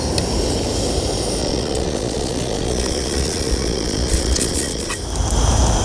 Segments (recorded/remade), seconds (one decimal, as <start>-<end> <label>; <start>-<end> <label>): 0.0-1.4 recorded; 1.4-4.9 remade; 4.9-5.8 recorded

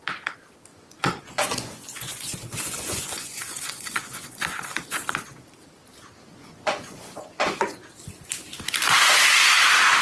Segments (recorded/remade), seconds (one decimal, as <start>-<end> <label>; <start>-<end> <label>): 0.0-0.7 recorded; 0.7-5.3 remade; 5.3-6.3 recorded; 6.3-7.8 remade; 7.8-10.0 recorded

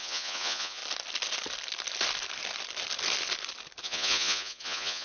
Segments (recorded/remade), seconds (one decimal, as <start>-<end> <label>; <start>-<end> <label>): 0.0-0.8 remade; 0.8-3.8 recorded; 3.8-5.0 remade

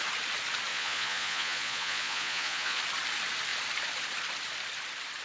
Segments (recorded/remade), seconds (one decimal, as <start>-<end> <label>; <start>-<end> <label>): 0.0-0.7 recorded; 0.7-2.8 remade; 2.8-5.2 recorded

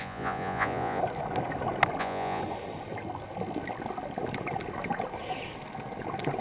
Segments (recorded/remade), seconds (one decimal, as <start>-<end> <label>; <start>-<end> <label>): 0.0-1.0 remade; 1.0-2.0 recorded; 2.0-2.4 remade; 2.4-6.4 recorded

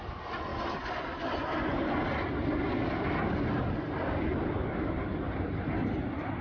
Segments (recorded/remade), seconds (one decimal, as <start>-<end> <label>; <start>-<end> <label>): 0.0-6.4 recorded

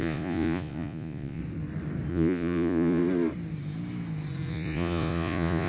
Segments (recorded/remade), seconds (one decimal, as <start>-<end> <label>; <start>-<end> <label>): 0.0-1.4 remade; 1.4-2.1 recorded; 2.1-3.0 remade; 3.0-4.5 recorded; 4.5-5.7 remade